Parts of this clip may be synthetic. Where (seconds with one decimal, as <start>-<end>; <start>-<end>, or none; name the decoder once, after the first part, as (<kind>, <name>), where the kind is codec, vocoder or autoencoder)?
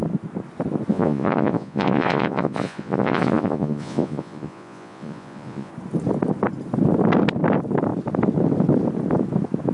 0.9-5.7 (vocoder, Vocos)